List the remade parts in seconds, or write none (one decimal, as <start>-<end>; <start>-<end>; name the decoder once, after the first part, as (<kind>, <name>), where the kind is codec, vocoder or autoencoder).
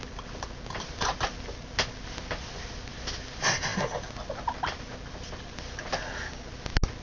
none